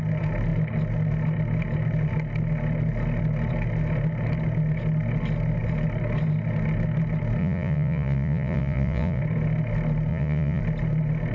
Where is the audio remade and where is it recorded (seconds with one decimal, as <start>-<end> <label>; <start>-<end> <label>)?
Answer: 0.0-7.4 recorded; 7.4-9.2 remade; 9.2-10.1 recorded; 10.1-10.6 remade; 10.6-11.3 recorded